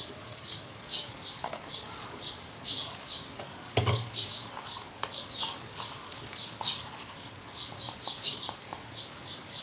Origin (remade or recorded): remade